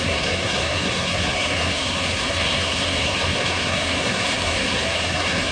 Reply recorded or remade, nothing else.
remade